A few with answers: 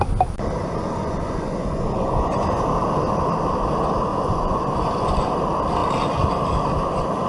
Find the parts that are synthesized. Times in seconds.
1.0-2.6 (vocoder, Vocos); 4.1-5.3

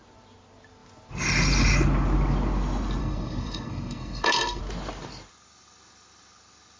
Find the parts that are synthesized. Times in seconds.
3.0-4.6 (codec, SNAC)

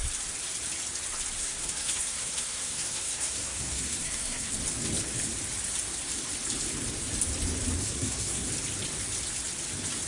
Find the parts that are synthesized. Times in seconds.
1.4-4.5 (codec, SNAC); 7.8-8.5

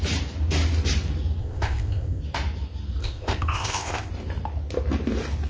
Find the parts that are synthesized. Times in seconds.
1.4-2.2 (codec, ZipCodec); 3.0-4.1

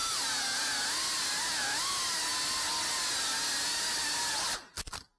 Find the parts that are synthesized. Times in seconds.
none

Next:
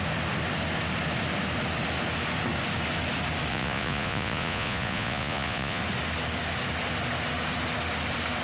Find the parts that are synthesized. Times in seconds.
3.5-5.8 (vocoder, Vocos)

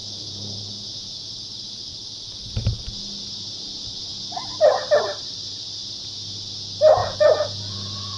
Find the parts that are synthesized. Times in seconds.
0.0-1.3 (vocoder, Vocos); 7.0-8.2

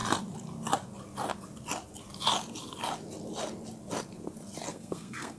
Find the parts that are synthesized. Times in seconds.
4.7-5.4 (codec, SNAC)